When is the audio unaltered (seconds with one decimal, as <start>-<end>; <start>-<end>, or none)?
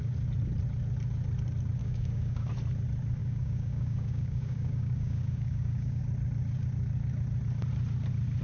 0.0-1.8; 2.5-3.2; 6.0-8.4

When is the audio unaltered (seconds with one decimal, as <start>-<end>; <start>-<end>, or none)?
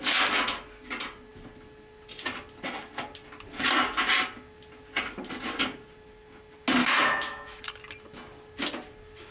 0.0-6.8; 7.6-9.3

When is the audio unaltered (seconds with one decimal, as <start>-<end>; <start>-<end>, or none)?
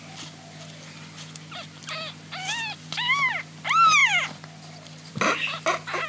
0.0-6.1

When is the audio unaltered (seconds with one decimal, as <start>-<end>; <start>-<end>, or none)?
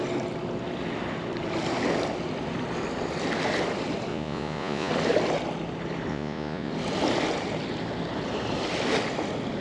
0.0-4.1; 4.9-6.1; 6.7-9.6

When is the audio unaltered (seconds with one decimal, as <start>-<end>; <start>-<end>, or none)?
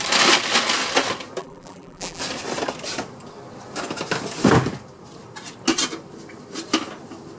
0.0-1.4; 2.2-7.4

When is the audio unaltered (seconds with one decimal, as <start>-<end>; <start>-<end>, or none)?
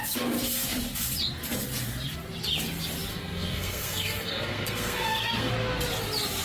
0.0-3.1; 5.5-6.4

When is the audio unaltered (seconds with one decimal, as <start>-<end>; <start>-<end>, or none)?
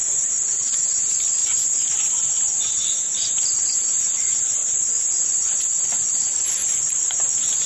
0.0-1.4; 2.0-6.6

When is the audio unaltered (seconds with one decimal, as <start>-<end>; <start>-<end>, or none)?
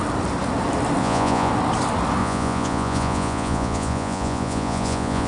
0.0-1.0; 1.5-2.2